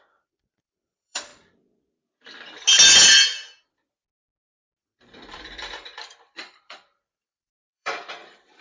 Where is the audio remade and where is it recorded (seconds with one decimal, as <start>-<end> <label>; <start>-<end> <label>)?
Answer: 0.0-1.3 remade; 1.3-4.8 recorded; 4.8-8.6 remade